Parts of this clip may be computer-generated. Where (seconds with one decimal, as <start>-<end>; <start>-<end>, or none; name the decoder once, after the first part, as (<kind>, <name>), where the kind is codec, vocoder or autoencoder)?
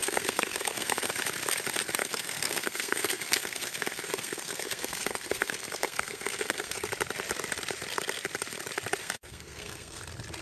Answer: 0.0-1.1 (codec, SNAC); 2.0-6.9; 9.0-10.0